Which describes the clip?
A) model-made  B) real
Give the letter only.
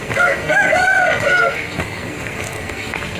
A